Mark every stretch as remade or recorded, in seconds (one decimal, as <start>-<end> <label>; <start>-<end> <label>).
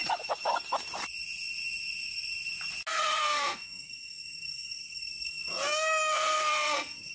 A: 0.0-2.9 recorded; 2.9-7.1 remade